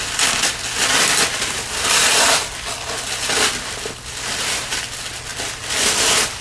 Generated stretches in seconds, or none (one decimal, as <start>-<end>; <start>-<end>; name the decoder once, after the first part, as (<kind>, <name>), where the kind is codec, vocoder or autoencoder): none